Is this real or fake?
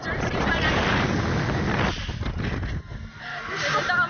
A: real